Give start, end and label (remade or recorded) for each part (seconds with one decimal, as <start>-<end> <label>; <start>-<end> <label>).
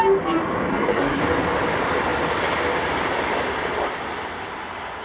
0.0-0.7 recorded; 0.7-1.2 remade; 1.2-5.0 recorded